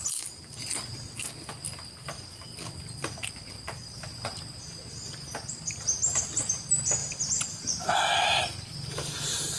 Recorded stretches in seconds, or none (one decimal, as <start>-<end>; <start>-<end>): 0.0-2.0; 2.5-7.0; 8.1-9.6